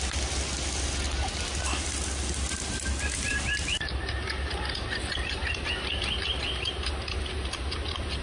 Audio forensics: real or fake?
real